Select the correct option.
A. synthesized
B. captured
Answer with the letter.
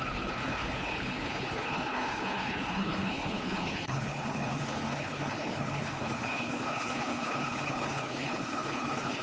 A